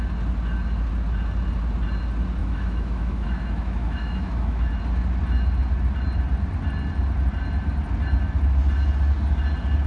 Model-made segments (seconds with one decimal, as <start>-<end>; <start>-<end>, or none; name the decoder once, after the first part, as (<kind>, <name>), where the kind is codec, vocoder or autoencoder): 2.4-4.8 (autoencoder, DAC-VAE)